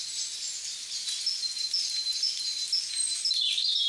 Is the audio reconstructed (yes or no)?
no